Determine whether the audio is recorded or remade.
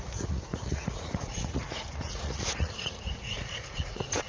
remade